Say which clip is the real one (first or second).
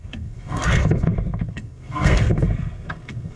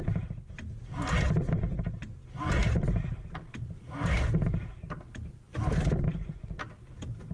second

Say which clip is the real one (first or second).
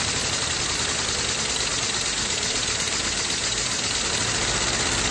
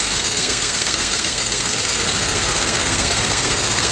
first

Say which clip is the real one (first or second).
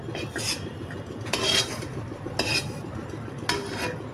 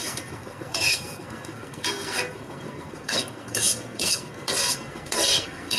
first